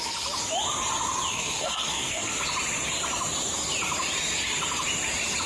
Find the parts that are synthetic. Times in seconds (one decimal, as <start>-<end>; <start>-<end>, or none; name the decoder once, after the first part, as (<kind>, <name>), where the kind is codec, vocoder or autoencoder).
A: 1.3-2.3 (codec, SNAC)